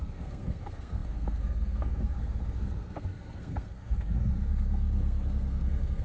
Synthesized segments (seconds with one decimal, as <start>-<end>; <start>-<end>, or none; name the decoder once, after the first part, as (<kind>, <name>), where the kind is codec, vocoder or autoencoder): 0.0-6.0 (codec, SNAC)